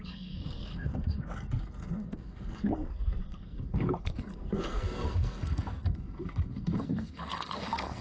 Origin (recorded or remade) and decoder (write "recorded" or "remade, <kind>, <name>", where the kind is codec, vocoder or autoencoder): remade, codec, SNAC